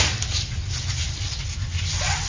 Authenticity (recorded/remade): recorded